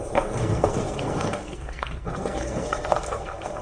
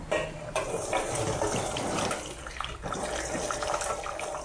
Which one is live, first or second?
second